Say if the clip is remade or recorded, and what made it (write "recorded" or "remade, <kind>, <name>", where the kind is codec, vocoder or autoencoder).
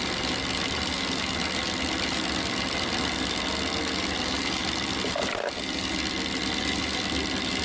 recorded